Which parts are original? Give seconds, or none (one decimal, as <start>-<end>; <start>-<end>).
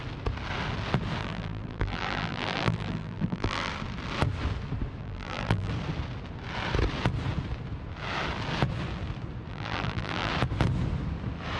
0.0-1.2; 3.7-5.0; 5.7-9.5; 10.3-11.6